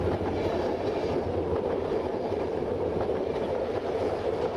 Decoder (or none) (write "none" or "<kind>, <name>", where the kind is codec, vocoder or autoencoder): none